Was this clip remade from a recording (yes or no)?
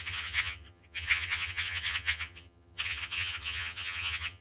yes